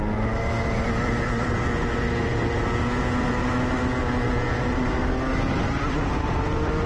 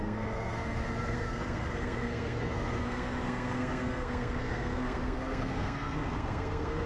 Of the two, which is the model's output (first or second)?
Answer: second